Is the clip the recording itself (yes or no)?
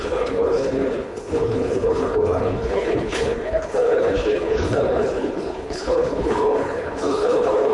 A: no